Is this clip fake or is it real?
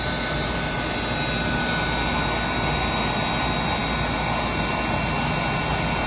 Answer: real